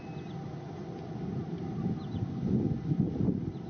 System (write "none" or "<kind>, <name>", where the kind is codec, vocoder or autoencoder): none